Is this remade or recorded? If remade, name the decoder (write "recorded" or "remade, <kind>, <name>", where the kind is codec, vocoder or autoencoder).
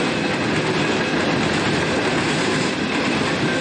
recorded